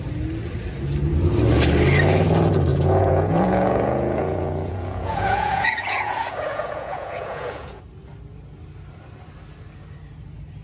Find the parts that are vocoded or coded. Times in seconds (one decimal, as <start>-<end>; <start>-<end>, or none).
2.7-7.8